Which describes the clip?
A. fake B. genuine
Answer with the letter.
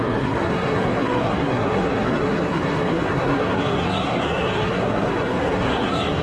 A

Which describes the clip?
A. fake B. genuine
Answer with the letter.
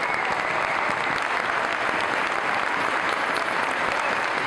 B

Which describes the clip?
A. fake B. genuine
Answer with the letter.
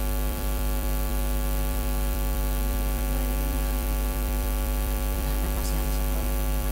A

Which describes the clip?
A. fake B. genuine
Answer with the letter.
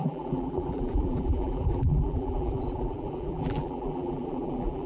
A